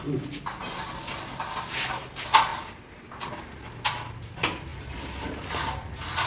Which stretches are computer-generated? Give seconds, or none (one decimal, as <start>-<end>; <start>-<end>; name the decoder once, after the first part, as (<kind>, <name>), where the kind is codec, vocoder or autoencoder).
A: 4.7-6.3 (vocoder, BigVGAN v2)